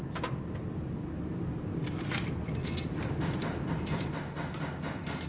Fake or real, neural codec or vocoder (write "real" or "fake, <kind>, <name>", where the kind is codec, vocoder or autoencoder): real